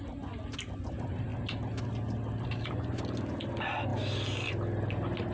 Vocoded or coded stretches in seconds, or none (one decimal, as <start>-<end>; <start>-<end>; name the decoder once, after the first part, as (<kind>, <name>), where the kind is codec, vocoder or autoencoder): none